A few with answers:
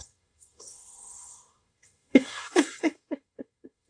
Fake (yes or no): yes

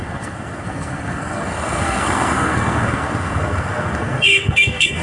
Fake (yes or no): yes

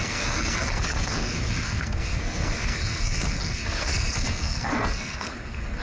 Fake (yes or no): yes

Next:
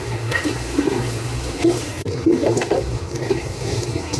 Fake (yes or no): yes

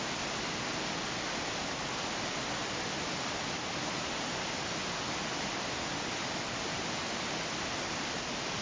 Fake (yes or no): no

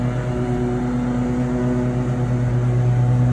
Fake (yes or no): no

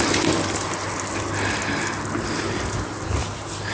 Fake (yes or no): no